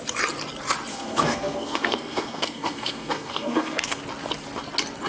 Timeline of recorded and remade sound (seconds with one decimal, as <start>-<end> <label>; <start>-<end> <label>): 0.0-0.9 recorded; 0.9-4.0 remade; 4.0-5.1 recorded